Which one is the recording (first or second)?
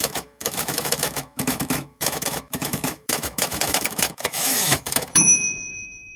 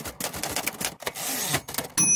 second